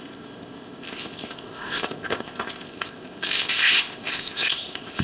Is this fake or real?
fake